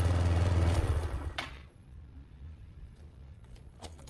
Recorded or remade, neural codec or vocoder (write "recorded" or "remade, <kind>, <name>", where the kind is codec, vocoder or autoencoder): remade, vocoder, Vocos